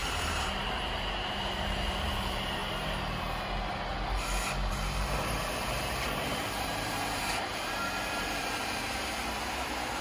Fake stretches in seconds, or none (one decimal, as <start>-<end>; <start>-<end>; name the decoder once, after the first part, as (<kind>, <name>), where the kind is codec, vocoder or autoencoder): 0.0-2.6 (vocoder, BigVGAN v2); 4.7-10.0